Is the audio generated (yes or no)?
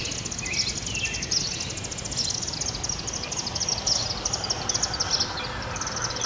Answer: no